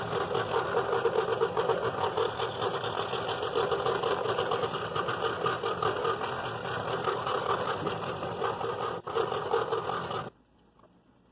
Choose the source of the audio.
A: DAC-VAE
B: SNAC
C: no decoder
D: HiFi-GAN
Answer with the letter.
C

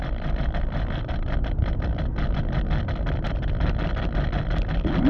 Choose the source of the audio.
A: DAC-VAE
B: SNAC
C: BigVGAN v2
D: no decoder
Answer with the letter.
D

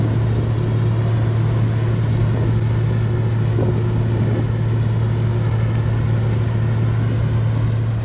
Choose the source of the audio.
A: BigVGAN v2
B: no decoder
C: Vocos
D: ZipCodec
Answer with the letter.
B